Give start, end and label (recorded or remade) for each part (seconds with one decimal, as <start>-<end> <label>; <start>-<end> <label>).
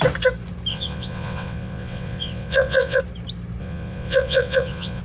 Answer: 0.0-0.7 recorded; 0.7-3.0 remade; 3.0-3.6 recorded; 3.6-5.0 remade